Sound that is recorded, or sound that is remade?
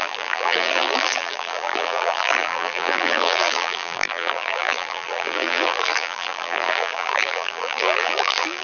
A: remade